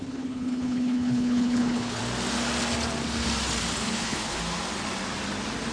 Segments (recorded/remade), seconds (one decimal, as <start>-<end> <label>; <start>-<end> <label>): 0.0-2.0 remade; 2.0-3.8 recorded; 3.8-4.4 remade; 4.4-5.7 recorded